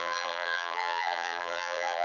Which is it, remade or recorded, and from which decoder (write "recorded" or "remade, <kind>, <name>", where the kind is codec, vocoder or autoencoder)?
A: remade, vocoder, BigVGAN v2